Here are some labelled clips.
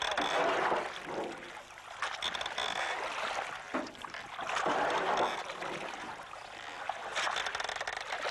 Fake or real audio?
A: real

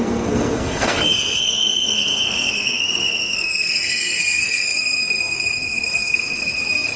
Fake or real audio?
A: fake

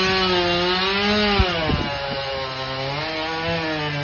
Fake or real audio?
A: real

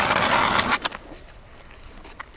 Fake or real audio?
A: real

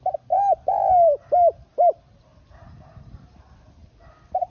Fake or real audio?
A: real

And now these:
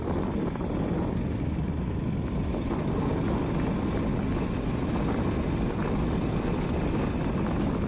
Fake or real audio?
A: real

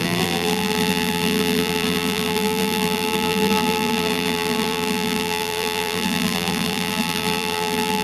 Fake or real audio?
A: fake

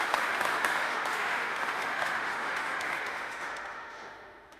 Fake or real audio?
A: fake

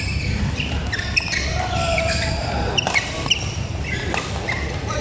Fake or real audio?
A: fake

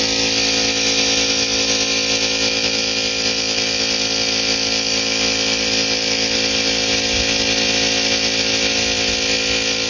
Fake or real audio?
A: real